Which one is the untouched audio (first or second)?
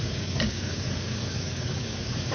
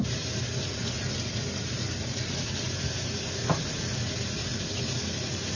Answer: second